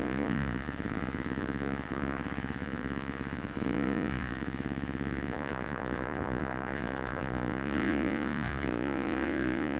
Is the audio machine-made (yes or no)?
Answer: yes